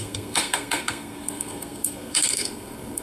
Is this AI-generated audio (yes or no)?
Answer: yes